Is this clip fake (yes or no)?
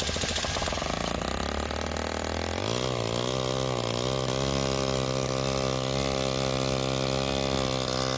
no